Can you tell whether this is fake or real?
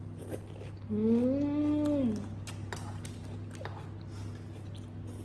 real